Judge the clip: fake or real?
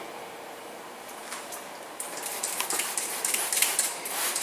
fake